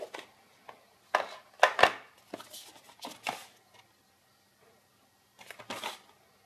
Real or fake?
real